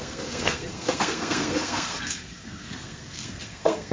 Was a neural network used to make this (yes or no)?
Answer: yes